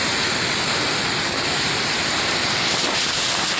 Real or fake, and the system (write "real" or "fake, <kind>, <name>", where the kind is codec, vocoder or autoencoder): real